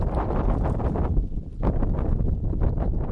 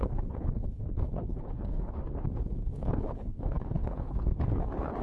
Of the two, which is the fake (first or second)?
second